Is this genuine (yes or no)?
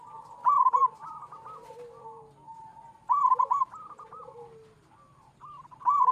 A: no